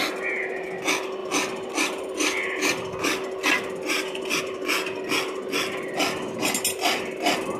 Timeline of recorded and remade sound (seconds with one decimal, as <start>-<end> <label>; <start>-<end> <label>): 0.0-1.2 recorded; 1.2-4.4 remade; 4.4-7.6 recorded